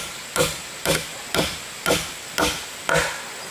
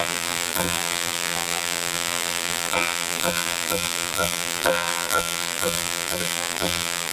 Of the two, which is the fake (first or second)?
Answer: second